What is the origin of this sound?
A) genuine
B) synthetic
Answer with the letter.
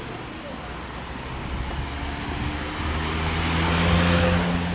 A